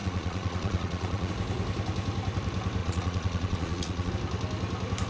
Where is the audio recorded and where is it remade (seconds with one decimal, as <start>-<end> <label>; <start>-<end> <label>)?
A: 0.0-1.3 remade; 1.3-2.8 recorded; 2.8-4.1 remade; 4.1-5.1 recorded